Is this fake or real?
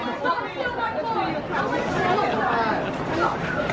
real